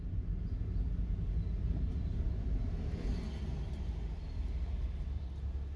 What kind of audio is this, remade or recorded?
recorded